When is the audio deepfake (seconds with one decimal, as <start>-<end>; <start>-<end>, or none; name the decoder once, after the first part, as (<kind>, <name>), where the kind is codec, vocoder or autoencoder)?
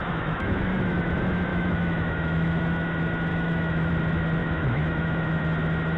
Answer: 0.0-0.7 (autoencoder, DAC-VAE); 1.5-2.6; 3.3-3.9; 4.4-5.4